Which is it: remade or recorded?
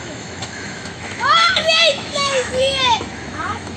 remade